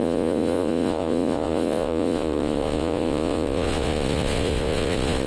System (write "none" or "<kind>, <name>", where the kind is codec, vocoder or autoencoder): vocoder, Vocos